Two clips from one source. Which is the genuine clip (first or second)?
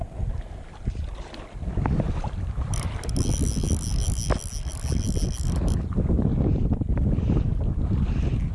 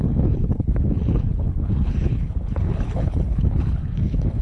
first